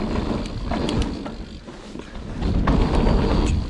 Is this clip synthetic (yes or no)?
no